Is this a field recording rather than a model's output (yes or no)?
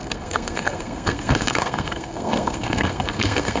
no